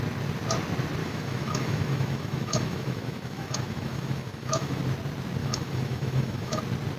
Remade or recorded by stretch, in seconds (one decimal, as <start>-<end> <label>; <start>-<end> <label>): 0.0-1.0 recorded; 1.0-4.8 remade; 4.8-5.4 recorded; 5.4-6.6 remade; 6.6-7.0 recorded